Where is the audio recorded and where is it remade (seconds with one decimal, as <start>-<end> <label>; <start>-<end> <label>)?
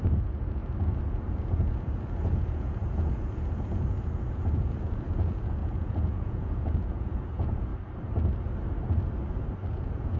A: 0.0-0.6 remade; 0.6-1.1 recorded; 1.1-7.7 remade; 7.7-9.7 recorded; 9.7-10.2 remade